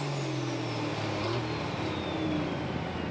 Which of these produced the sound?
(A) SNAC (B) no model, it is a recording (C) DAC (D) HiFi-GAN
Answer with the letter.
B